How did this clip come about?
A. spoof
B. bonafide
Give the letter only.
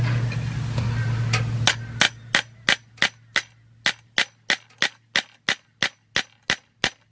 B